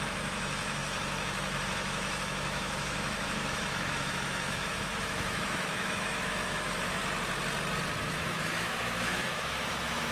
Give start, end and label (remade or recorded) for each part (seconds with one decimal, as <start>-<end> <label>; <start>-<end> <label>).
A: 0.0-7.0 remade; 7.0-8.0 recorded; 8.0-10.1 remade